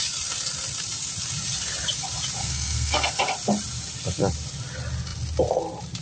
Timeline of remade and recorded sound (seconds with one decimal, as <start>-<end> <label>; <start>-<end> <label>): 0.0-2.4 recorded; 2.4-3.2 remade; 3.2-6.0 recorded